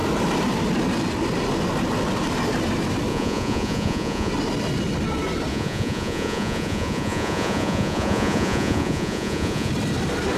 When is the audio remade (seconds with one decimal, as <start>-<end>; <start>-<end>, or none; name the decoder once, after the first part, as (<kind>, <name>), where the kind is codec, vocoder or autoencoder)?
3.1-4.3 (vocoder, Vocos); 5.5-9.7